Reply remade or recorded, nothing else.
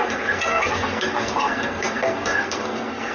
remade